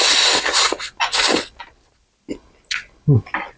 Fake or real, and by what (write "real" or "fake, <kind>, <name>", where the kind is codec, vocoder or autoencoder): real